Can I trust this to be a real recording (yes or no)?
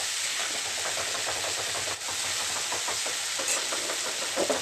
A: yes